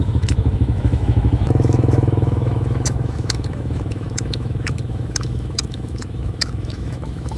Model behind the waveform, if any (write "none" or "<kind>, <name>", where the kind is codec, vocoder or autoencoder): autoencoder, DAC-VAE